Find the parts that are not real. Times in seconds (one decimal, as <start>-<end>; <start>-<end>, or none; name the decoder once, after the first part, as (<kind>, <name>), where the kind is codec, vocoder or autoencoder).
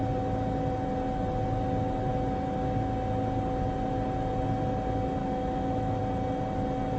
5.2-6.0 (autoencoder, DAC-VAE)